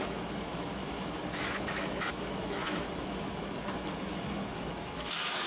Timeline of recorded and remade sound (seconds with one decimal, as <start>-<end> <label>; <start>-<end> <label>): 0.0-5.5 remade